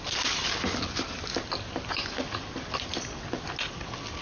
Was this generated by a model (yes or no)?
no